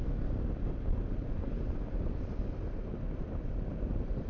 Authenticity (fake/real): real